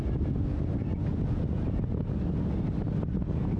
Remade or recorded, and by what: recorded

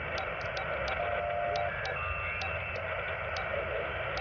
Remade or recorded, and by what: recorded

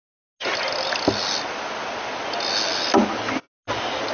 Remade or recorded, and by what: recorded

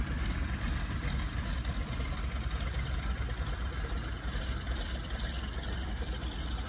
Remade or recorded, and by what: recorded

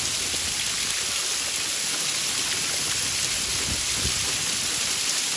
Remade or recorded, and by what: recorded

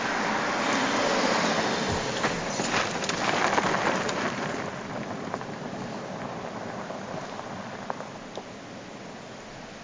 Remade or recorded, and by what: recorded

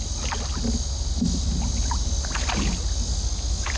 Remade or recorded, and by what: recorded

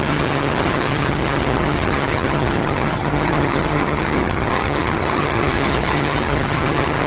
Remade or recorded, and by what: remade, vocoder, HiFi-GAN